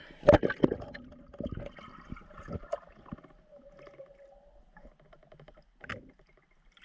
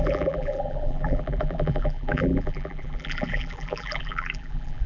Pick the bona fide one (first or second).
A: first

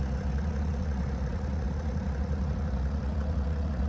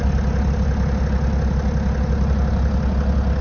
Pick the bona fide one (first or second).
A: second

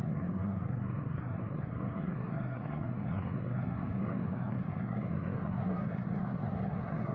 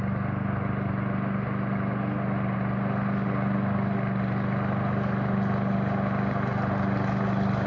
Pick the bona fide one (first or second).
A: second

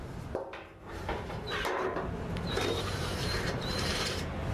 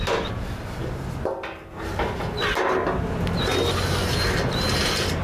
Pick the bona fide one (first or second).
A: second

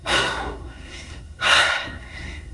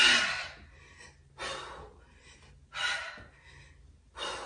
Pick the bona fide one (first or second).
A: second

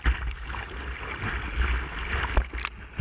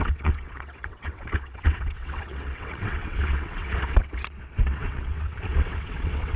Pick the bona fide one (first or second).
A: first